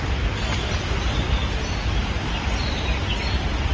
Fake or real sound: real